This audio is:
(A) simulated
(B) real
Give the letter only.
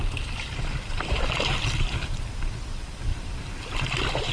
B